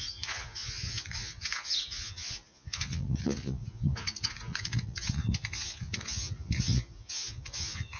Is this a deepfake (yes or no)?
yes